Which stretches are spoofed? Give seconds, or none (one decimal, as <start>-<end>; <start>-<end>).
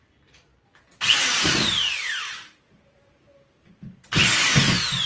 none